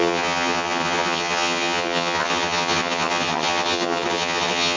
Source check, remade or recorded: remade